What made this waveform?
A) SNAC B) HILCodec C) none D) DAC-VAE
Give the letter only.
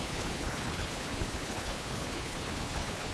B